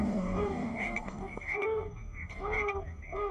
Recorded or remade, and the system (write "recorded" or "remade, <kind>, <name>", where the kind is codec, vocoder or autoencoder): remade, codec, DAC